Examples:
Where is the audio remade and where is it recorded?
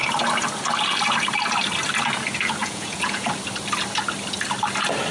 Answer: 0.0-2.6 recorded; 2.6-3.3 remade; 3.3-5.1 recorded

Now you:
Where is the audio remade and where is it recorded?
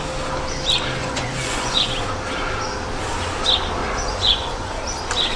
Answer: 0.0-1.0 recorded; 1.0-1.9 remade; 1.9-3.8 recorded; 3.8-4.8 remade; 4.8-5.4 recorded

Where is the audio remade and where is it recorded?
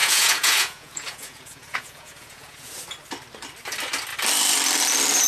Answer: 0.0-2.7 remade; 2.7-5.3 recorded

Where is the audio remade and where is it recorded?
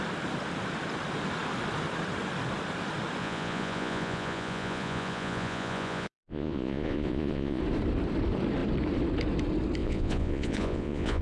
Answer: 0.0-3.2 recorded; 3.2-7.6 remade; 7.6-9.8 recorded; 9.8-11.2 remade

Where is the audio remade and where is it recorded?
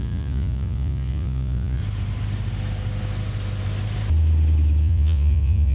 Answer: 0.0-1.8 remade; 1.8-4.8 recorded; 4.8-5.7 remade